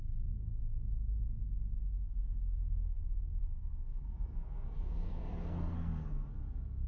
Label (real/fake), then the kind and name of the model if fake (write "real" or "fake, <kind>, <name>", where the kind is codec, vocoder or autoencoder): fake, codec, SNAC